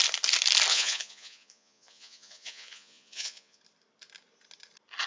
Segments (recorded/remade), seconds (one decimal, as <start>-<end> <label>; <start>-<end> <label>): 0.0-0.7 recorded; 0.7-3.6 remade; 3.6-5.1 recorded